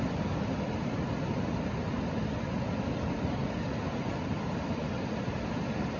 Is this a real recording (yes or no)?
yes